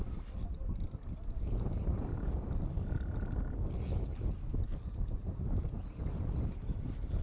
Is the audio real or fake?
real